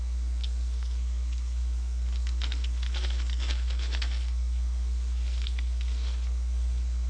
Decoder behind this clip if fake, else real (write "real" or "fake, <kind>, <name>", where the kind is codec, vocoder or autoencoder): fake, codec, SNAC